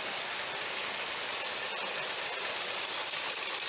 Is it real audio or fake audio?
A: real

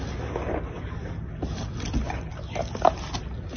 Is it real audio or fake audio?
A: real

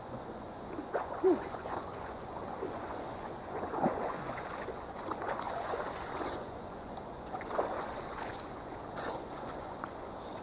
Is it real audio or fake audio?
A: fake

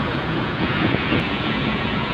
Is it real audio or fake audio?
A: fake